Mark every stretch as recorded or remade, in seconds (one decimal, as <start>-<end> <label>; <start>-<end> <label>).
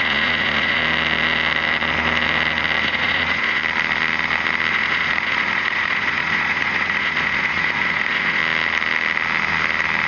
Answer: 0.0-0.8 remade; 0.8-2.8 recorded; 2.8-3.6 remade; 3.6-4.7 recorded; 4.7-8.4 remade; 8.4-10.1 recorded